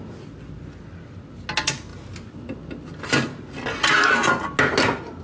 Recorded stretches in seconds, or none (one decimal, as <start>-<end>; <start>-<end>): 0.0-5.2